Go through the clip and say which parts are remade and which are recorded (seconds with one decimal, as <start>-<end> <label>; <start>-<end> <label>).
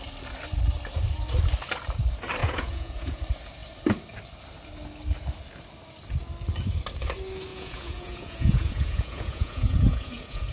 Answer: 0.0-2.4 recorded; 2.4-3.2 remade; 3.2-7.5 recorded; 7.5-10.5 remade